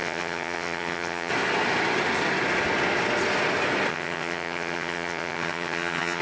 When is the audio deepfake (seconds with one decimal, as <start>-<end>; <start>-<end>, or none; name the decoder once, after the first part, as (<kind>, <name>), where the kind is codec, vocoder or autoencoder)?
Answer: 0.0-1.3 (vocoder, HiFi-GAN); 3.9-6.2